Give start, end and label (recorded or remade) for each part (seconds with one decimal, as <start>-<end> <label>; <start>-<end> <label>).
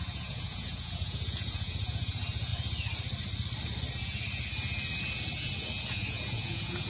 0.0-2.5 remade; 2.5-5.8 recorded; 5.8-6.9 remade